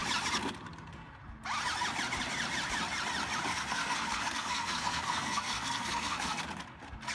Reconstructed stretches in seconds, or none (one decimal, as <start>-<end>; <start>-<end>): 3.5-6.4